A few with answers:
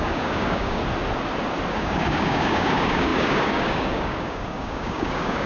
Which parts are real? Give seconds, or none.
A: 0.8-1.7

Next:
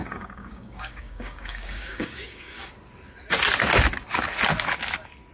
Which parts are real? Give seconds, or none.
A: 2.7-5.3